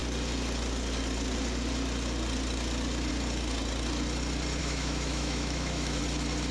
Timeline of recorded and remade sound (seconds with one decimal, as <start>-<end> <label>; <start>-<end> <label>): 0.0-4.6 recorded; 4.6-6.0 remade; 6.0-6.5 recorded